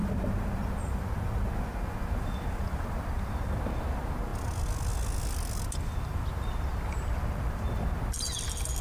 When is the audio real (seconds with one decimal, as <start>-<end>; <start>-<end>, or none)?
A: 0.0-8.8